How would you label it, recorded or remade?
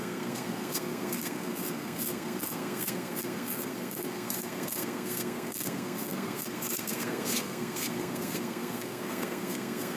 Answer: remade